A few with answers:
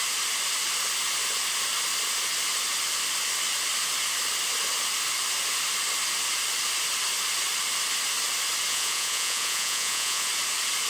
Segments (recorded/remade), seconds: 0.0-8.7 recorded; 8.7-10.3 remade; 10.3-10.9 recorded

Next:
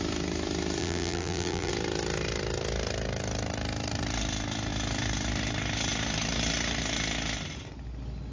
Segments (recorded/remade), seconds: 0.0-0.8 recorded; 0.8-1.7 remade; 1.7-8.3 recorded

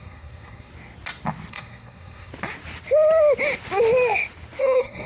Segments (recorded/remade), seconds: 0.0-0.7 remade; 0.7-1.5 recorded; 1.5-2.3 remade; 2.3-4.6 recorded; 4.6-5.1 remade

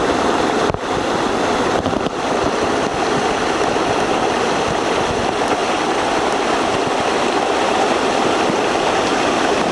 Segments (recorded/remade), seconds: 0.0-9.7 recorded

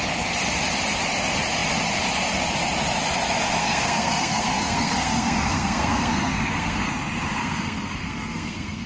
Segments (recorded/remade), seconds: 0.0-3.6 recorded; 3.6-6.9 remade; 6.9-7.4 recorded; 7.4-8.9 remade

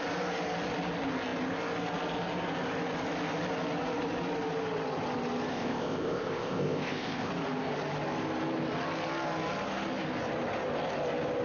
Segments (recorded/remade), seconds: 0.0-5.5 recorded; 5.5-7.3 remade; 7.3-11.4 recorded

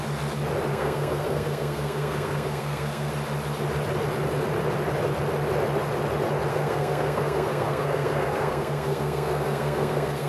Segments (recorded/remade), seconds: 0.0-0.7 recorded; 0.7-3.1 remade; 3.1-6.5 recorded; 6.5-10.3 remade

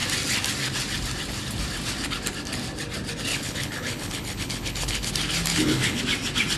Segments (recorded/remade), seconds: 0.0-3.3 recorded; 3.3-5.1 remade; 5.1-5.5 recorded; 5.5-6.0 remade; 6.0-6.6 recorded